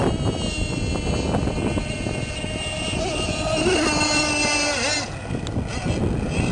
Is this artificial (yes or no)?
no